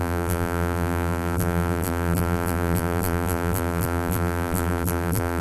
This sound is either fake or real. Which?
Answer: fake